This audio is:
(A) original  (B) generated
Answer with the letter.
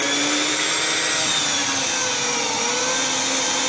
B